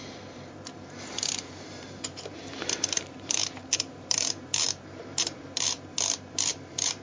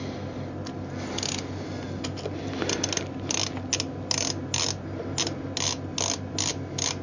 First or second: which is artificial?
first